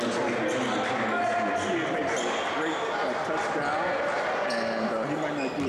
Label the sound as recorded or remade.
recorded